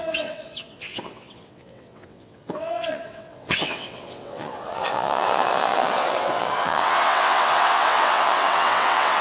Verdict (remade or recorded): remade